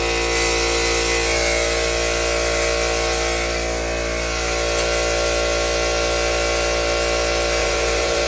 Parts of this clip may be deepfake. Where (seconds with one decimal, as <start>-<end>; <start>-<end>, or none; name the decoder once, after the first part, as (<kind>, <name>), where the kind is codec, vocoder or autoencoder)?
7.6-8.3 (vocoder, BigVGAN v2)